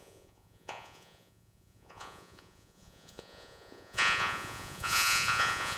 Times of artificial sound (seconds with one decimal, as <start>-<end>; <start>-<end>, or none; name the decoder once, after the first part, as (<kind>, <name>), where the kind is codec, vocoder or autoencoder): 0.0-5.8 (vocoder, Vocos)